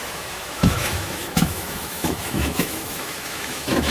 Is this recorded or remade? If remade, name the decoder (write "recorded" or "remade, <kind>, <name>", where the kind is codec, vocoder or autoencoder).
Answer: remade, autoencoder, DAC-VAE